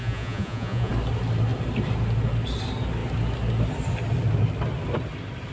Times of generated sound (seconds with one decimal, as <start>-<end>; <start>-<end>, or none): 0.0-0.9